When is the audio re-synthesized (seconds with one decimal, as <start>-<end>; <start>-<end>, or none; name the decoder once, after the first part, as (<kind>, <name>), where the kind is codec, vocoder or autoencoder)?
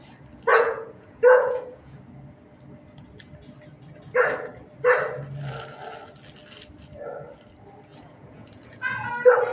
0.5-2.0 (vocoder, Vocos); 7.9-9.1